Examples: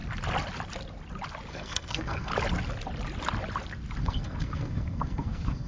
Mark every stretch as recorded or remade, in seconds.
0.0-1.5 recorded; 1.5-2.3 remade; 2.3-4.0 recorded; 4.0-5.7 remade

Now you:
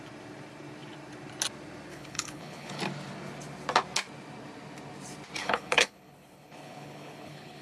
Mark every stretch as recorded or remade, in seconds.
0.0-1.9 recorded; 1.9-2.8 remade; 2.8-5.4 recorded; 5.4-7.6 remade